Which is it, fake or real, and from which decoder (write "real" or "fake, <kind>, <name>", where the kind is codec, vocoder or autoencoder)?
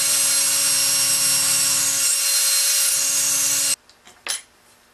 real